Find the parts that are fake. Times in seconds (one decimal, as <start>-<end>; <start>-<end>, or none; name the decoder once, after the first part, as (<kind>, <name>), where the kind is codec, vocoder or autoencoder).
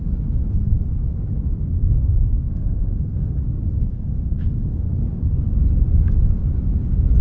2.5-3.4 (codec, SNAC); 3.9-4.4